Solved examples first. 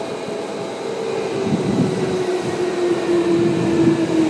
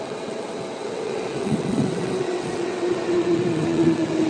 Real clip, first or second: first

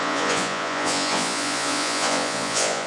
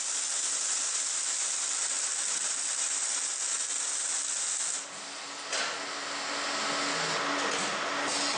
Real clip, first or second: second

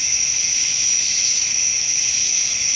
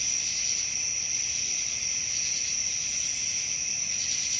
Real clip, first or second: second